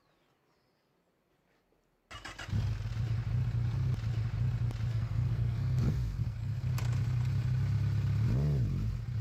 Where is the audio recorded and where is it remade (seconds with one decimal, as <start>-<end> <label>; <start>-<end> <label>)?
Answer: 0.0-4.9 recorded; 4.9-6.7 remade; 6.7-9.2 recorded